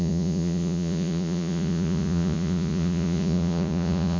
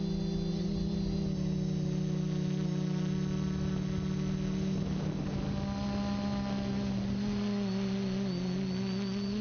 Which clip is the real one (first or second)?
second